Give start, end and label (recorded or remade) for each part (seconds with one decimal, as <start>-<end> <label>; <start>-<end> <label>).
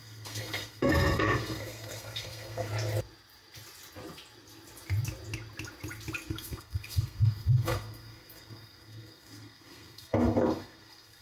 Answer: 0.0-2.7 remade; 2.7-6.3 recorded; 6.3-11.2 remade